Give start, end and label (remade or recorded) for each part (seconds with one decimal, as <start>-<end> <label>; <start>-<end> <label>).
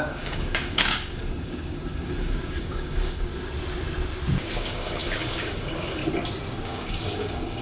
0.0-3.3 remade; 3.3-4.4 recorded; 4.4-6.0 remade; 6.0-6.6 recorded; 6.6-7.6 remade